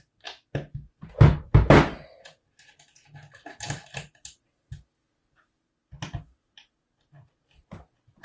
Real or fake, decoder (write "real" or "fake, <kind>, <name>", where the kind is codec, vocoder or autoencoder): real